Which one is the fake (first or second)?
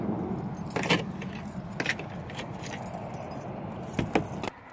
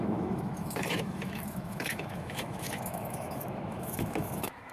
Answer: second